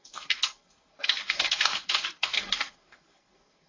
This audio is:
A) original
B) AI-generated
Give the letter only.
B